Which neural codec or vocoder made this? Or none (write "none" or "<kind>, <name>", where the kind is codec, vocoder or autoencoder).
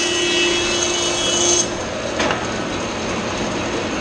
none